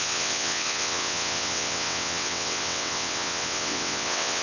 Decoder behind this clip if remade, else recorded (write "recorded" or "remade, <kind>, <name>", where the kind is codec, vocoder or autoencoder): remade, vocoder, WaveNeXt